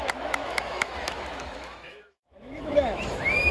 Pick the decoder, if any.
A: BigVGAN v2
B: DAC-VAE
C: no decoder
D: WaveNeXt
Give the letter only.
B